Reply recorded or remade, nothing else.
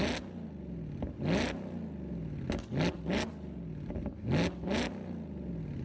recorded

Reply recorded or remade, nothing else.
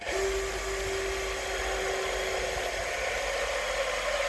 recorded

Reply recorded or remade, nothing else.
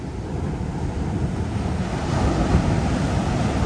recorded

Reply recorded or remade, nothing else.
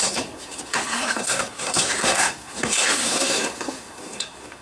remade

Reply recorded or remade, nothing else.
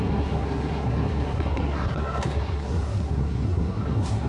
remade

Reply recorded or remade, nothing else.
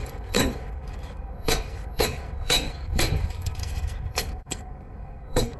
remade